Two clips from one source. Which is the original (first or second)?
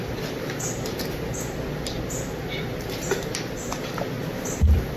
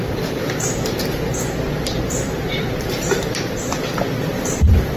first